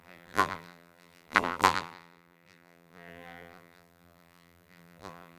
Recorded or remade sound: remade